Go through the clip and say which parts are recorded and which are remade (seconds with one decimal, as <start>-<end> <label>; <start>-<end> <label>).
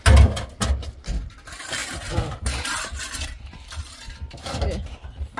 0.0-5.4 recorded